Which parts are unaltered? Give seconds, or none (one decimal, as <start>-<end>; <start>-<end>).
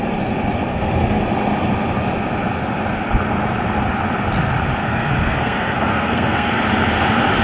0.0-0.7; 1.2-4.8; 6.6-7.4